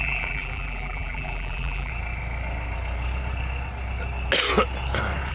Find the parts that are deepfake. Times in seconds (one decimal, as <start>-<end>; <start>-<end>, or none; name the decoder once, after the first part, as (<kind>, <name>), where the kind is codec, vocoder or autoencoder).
0.0-1.9 (vocoder, BigVGAN v2)